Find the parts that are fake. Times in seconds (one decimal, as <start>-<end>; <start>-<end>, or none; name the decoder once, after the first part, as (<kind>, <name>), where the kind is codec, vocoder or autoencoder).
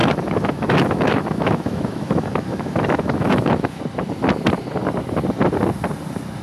0.0-3.8 (autoencoder, DAC-VAE)